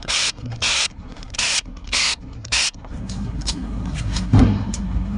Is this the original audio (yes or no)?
no